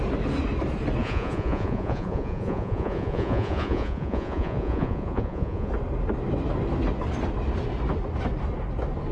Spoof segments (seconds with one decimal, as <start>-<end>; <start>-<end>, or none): 1.0-5.7